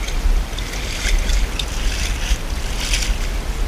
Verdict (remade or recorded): recorded